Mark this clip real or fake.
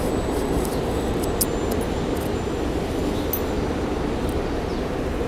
real